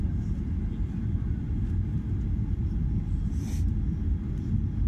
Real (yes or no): yes